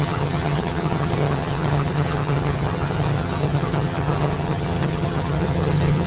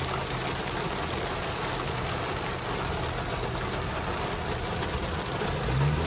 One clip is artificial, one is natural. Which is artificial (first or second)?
first